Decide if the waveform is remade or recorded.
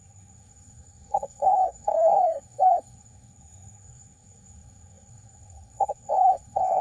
remade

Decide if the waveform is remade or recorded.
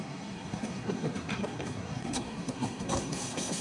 remade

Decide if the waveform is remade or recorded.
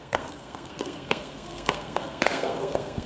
remade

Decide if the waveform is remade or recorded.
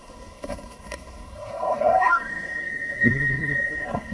remade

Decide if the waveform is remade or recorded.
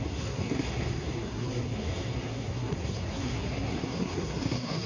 remade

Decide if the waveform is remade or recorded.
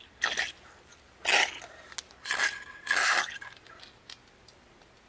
recorded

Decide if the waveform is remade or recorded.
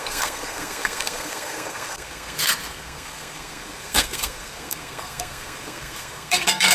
remade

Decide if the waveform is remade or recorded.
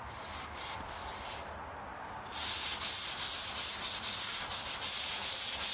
recorded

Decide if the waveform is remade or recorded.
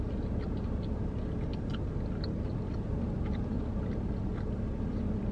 recorded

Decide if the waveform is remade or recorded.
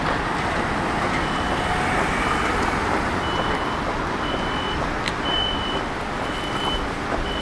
recorded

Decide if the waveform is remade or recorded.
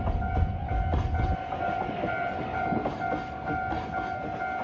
recorded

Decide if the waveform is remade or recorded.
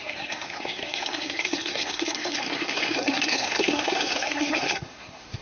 remade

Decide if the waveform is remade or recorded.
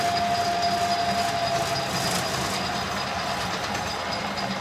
recorded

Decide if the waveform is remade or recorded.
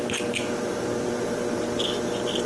recorded